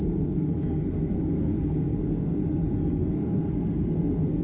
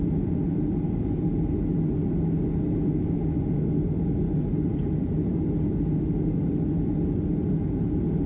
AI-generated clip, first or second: first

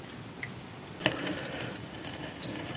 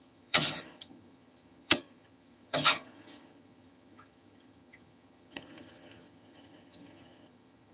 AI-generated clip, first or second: second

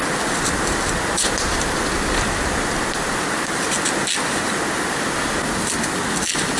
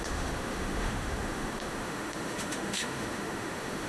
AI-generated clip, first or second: second